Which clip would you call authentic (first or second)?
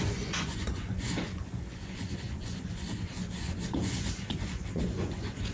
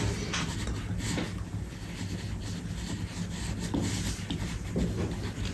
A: second